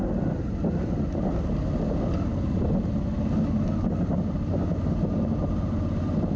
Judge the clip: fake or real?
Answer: real